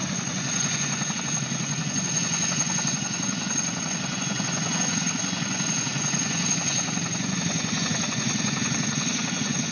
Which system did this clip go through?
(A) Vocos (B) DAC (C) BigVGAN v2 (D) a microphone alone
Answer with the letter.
A